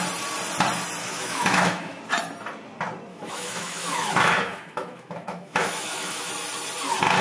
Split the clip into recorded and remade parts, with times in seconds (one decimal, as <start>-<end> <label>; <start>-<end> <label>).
0.0-1.0 recorded; 1.0-2.0 remade; 2.0-3.1 recorded; 3.1-6.3 remade; 6.3-7.2 recorded